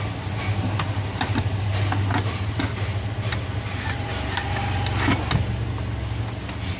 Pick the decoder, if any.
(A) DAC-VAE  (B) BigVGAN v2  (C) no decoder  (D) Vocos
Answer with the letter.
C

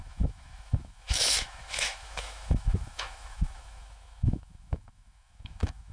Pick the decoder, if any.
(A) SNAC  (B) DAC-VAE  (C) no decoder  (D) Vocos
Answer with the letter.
B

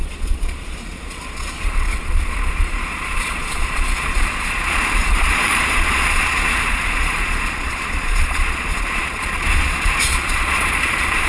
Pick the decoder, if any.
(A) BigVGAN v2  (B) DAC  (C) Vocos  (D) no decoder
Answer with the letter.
C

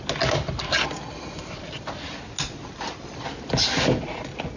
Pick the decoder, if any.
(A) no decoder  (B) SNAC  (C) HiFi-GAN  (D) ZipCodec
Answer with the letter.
A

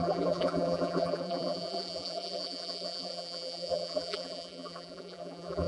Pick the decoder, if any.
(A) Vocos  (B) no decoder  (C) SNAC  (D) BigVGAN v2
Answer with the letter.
D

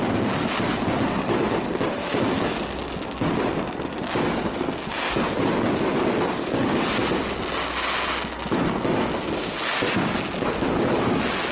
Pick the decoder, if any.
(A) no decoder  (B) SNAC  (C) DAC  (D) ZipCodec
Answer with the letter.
A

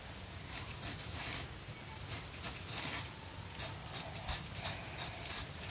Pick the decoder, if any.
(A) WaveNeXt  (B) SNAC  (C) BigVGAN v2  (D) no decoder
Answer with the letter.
D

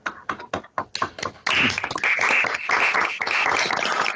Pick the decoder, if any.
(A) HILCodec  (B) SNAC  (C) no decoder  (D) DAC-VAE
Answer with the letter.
C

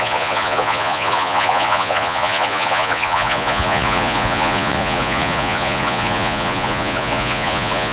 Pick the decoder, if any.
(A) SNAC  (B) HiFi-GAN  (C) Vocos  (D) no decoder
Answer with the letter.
C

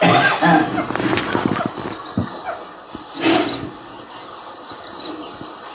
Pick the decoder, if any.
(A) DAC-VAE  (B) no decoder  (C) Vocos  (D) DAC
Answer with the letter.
B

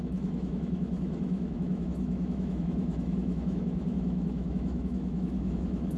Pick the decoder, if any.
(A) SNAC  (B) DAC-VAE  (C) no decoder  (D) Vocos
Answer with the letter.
B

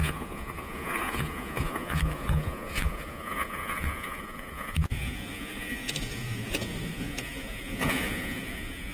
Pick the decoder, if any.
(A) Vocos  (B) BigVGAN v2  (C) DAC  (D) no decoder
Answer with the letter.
A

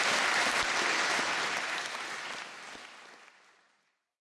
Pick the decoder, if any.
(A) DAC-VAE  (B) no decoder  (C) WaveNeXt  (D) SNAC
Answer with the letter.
B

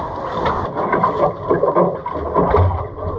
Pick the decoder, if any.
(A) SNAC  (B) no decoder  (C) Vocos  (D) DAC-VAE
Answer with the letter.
B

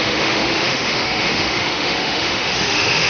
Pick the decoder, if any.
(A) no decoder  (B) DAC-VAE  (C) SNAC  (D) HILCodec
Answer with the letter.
B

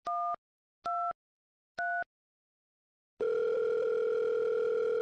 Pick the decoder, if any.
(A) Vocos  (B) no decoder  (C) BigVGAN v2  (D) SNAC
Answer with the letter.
B